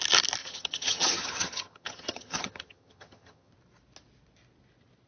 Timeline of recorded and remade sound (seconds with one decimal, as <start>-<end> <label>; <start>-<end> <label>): 0.0-0.4 recorded; 0.4-3.5 remade; 3.5-5.1 recorded